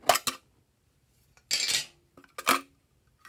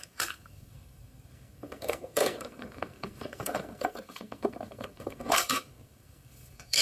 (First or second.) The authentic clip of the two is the first